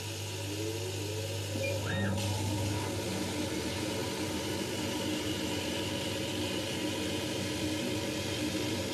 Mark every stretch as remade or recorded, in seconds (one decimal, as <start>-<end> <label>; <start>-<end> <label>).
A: 0.0-8.9 recorded